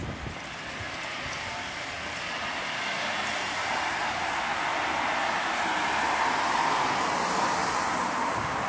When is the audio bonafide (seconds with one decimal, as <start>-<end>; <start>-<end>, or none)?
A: 0.0-8.7